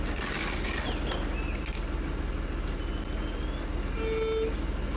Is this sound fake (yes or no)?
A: no